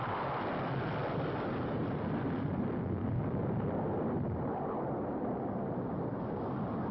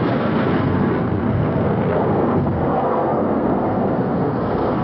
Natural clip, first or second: first